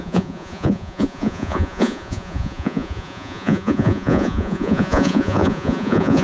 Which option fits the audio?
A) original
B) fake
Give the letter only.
B